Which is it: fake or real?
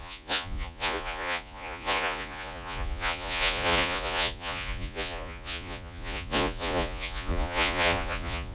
fake